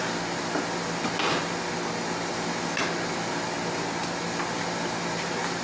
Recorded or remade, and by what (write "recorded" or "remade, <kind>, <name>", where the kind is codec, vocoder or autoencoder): recorded